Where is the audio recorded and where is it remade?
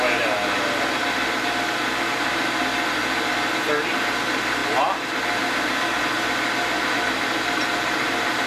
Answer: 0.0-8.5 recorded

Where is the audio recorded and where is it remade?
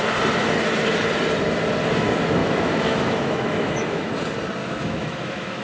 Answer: 0.0-2.4 recorded; 2.4-4.1 remade; 4.1-4.6 recorded; 4.6-5.6 remade